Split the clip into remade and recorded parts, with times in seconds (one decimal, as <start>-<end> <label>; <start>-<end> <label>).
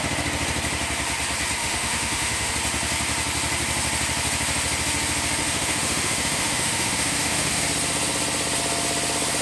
0.0-1.6 recorded; 1.6-2.5 remade; 2.5-5.4 recorded; 5.4-7.6 remade; 7.6-9.4 recorded